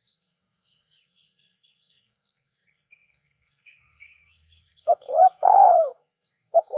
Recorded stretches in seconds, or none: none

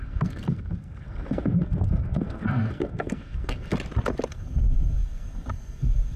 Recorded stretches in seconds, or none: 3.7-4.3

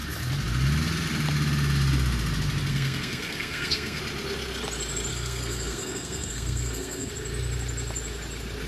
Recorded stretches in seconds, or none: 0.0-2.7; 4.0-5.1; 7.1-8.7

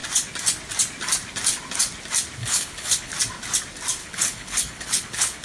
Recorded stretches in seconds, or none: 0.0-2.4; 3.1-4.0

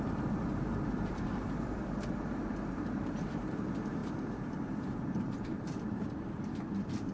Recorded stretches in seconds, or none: none